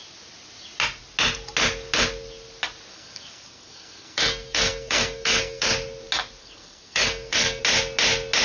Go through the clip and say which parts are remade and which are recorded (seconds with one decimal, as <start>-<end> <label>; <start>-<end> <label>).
0.0-2.9 recorded; 2.9-5.7 remade; 5.7-6.4 recorded; 6.4-7.6 remade; 7.6-8.4 recorded